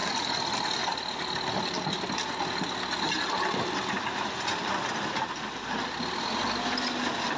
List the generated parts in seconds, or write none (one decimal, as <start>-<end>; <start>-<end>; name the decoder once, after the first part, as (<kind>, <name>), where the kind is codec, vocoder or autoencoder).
none